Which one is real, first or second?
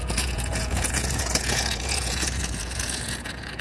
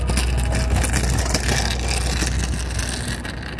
second